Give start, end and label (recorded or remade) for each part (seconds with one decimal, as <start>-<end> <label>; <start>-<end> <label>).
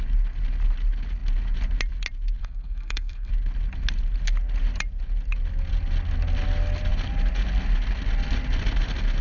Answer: 0.0-2.4 recorded; 2.4-3.3 remade; 3.3-9.2 recorded